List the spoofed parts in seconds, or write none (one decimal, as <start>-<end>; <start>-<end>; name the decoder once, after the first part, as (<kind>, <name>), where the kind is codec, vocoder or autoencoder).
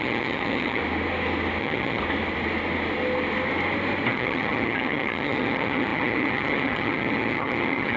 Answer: 0.0-0.8 (vocoder, HiFi-GAN); 1.6-2.0; 4.1-8.0